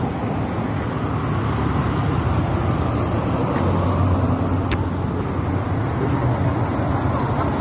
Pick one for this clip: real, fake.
real